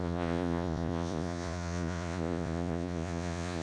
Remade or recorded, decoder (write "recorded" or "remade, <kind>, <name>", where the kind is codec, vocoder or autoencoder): remade, vocoder, Vocos